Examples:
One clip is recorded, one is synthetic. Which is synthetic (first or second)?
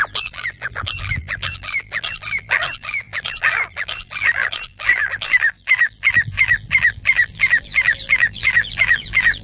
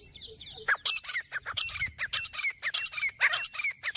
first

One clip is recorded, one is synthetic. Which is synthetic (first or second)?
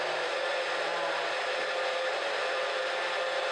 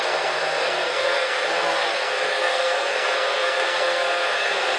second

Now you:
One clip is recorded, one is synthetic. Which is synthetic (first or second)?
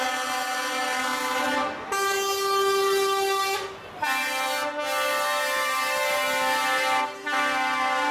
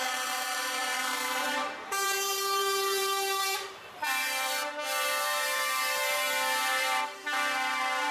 second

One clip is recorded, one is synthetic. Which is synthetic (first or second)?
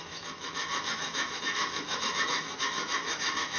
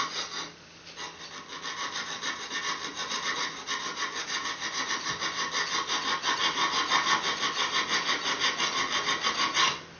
first